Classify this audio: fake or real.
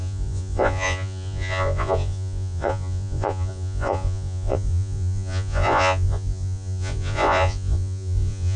fake